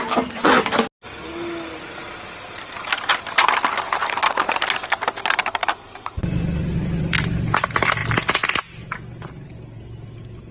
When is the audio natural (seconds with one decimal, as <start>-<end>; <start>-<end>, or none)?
0.0-5.6; 7.0-10.5